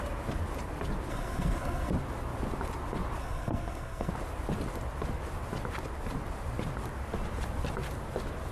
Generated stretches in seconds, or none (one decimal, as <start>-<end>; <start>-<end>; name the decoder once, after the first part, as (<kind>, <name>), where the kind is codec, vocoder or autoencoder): 1.1-1.9 (codec, SNAC); 3.2-4.1